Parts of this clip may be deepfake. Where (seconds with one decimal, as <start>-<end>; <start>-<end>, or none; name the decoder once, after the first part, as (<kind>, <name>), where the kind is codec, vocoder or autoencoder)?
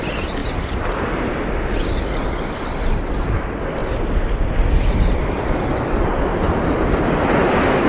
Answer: none